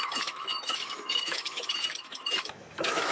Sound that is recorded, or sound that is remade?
remade